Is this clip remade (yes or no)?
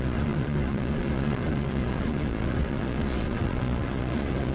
yes